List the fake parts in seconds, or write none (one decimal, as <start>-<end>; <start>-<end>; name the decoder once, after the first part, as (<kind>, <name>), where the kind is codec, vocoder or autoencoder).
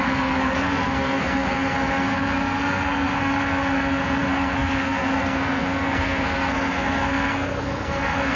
0.0-8.3 (codec, SNAC)